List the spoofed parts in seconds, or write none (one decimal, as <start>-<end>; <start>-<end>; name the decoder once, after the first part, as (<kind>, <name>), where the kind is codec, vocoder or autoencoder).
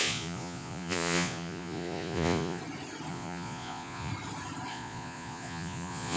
0.0-2.6 (vocoder, Vocos); 3.1-4.1; 4.7-6.2